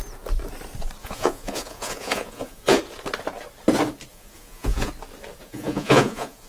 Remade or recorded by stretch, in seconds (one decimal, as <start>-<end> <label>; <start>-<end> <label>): 0.0-1.0 recorded; 1.0-2.8 remade; 2.8-4.1 recorded; 4.1-4.9 remade; 4.9-5.4 recorded; 5.4-6.5 remade